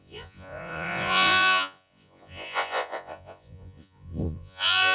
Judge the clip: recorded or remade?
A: remade